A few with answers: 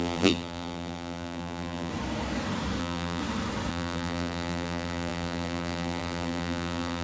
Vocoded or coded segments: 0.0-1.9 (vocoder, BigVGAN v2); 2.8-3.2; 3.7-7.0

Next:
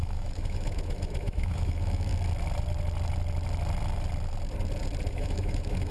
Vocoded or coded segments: 0.0-2.1 (autoencoder, DAC-VAE); 5.1-5.9

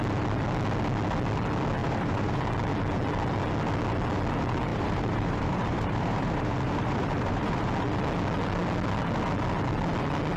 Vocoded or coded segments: 1.8-2.4 (vocoder, BigVGAN v2); 4.7-7.7

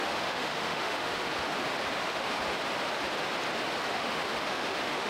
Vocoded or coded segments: 0.0-1.3 (autoencoder, DAC-VAE); 2.0-2.4; 3.9-5.1